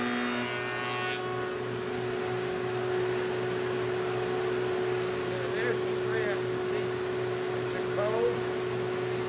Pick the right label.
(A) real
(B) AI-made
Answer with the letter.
A